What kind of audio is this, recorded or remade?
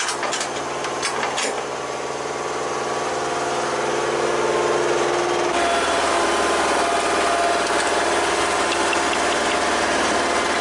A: recorded